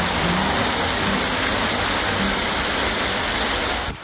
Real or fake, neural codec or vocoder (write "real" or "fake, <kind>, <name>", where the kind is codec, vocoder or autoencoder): real